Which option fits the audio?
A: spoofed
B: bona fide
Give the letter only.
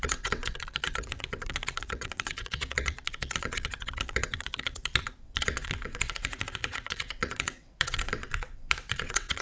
A